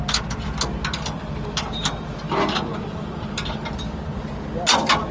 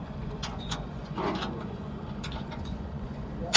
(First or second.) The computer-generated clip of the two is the second